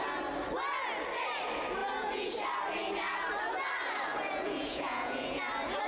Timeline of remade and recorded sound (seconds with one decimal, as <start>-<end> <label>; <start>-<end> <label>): 0.0-1.8 recorded; 1.8-2.3 remade; 2.3-4.1 recorded; 4.1-5.4 remade; 5.4-5.9 recorded